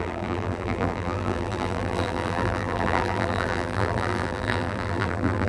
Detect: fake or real fake